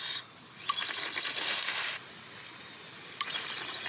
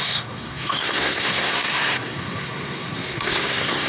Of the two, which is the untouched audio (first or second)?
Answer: first